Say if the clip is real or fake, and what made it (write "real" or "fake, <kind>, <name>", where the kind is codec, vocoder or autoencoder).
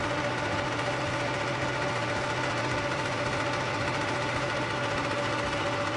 real